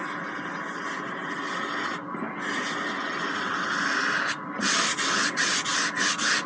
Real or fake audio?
real